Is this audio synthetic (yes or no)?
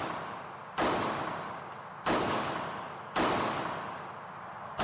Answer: no